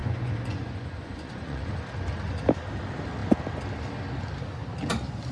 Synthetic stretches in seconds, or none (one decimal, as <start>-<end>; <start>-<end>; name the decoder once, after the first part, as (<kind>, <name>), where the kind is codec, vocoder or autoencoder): 0.0-1.7 (vocoder, Vocos)